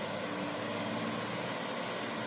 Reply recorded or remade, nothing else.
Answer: recorded